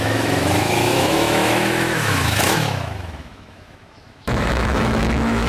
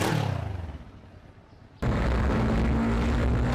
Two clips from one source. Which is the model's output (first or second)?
first